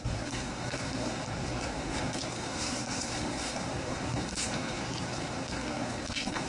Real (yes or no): no